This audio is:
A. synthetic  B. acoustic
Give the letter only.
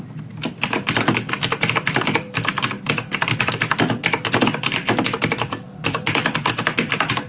A